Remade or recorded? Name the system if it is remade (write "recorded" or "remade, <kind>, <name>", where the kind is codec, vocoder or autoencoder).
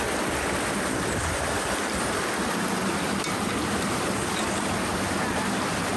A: recorded